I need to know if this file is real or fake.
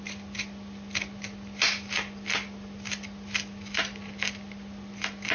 real